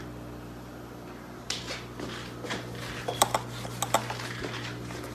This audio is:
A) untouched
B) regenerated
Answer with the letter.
A